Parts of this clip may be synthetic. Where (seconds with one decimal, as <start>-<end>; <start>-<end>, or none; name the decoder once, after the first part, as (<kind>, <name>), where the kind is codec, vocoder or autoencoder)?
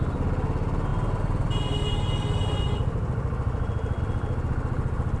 none